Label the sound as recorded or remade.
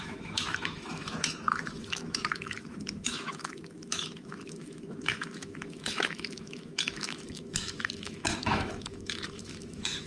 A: remade